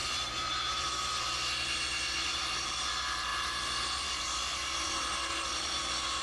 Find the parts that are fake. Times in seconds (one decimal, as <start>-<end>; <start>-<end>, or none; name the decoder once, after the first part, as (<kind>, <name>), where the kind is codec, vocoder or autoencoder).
0.0-6.2 (vocoder, BigVGAN v2)